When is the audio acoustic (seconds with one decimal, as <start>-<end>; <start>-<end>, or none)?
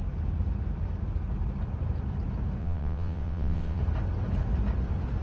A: 0.0-2.6; 3.8-5.2